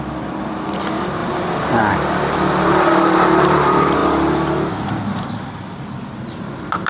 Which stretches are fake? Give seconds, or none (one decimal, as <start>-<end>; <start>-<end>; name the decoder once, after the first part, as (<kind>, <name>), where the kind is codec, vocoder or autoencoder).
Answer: 0.0-4.0 (vocoder, BigVGAN v2); 5.0-6.9